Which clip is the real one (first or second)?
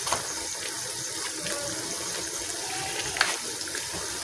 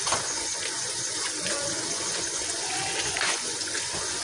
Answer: first